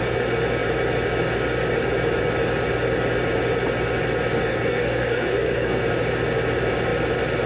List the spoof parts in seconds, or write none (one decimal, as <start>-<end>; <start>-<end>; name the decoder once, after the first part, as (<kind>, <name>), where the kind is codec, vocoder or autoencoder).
4.5-5.8 (codec, SNAC)